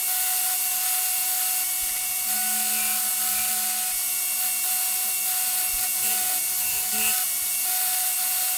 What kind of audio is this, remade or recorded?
recorded